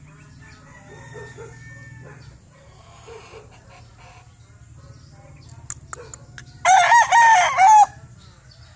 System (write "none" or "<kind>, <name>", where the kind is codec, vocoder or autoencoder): none